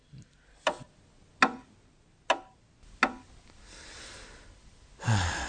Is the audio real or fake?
real